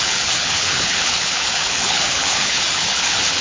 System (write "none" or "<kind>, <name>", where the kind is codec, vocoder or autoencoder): codec, HILCodec